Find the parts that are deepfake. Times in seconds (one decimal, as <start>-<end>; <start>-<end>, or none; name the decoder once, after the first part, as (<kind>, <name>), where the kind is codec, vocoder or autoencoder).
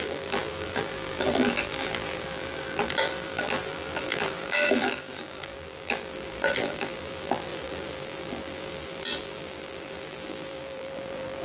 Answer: 0.0-11.4 (vocoder, BigVGAN v2)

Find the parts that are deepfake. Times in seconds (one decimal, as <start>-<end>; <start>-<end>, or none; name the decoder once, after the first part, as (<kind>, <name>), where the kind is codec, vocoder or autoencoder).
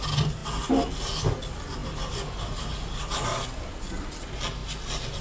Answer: none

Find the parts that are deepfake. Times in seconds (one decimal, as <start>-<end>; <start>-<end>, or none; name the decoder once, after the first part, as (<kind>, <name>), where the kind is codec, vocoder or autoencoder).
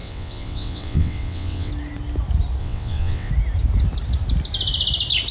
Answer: 0.0-1.7 (vocoder, WaveNeXt); 2.6-3.3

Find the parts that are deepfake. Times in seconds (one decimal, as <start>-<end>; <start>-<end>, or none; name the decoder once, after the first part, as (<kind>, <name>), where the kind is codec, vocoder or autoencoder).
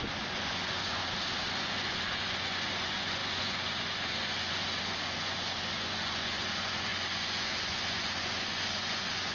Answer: 0.0-1.0 (vocoder, Vocos); 1.6-9.3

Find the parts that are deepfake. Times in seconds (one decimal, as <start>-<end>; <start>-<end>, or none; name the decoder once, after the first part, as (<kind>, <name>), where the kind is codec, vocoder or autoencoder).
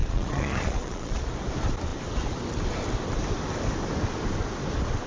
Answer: 0.0-1.3 (vocoder, Vocos)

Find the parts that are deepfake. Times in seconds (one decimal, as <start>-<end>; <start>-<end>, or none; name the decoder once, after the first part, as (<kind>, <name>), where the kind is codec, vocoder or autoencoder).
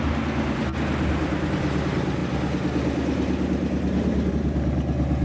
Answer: none